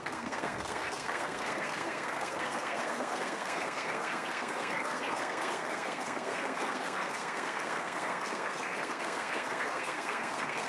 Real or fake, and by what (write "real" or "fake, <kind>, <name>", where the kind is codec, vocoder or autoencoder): fake, codec, SNAC